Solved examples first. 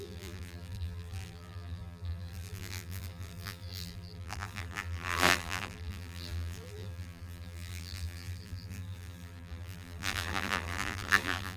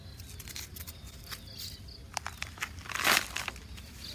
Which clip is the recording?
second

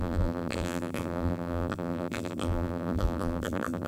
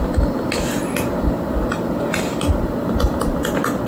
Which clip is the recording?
second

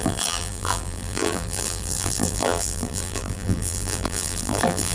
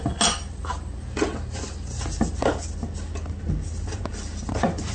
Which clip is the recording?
second